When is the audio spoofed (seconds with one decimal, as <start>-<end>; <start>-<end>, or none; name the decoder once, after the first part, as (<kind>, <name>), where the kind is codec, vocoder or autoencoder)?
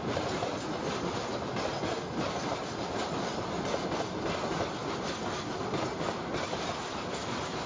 none